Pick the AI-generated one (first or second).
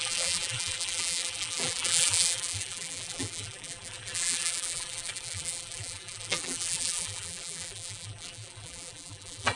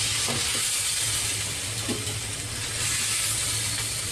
first